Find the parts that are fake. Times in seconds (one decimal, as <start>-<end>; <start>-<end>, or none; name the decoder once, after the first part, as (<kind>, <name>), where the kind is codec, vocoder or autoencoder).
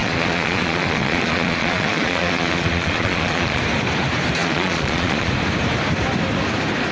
0.0-3.6 (vocoder, Vocos); 4.4-5.3